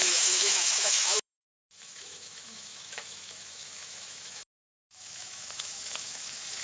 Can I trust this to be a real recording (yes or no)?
no